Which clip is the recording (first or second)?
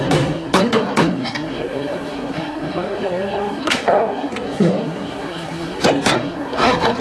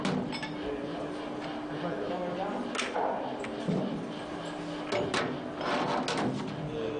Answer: second